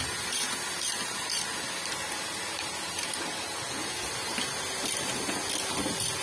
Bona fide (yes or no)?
yes